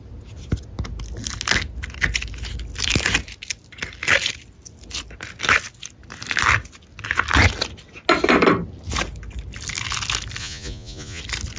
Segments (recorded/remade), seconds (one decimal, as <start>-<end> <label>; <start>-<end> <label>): 0.0-10.4 recorded; 10.4-11.2 remade; 11.2-11.6 recorded